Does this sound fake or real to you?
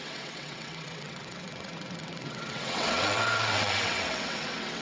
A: fake